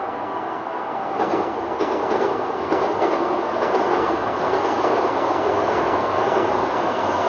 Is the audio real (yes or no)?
no